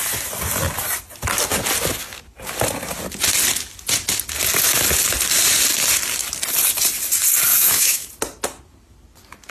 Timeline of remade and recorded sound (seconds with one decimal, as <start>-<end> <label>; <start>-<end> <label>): 0.0-7.5 recorded; 7.5-8.1 remade; 8.1-9.5 recorded